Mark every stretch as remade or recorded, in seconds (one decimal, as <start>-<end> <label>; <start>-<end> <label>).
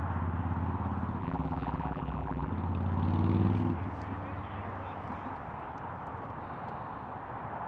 0.0-1.2 recorded; 1.2-2.5 remade; 2.5-7.7 recorded